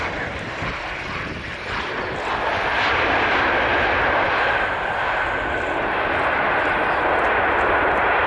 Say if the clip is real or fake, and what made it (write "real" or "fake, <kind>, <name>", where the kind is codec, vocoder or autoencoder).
real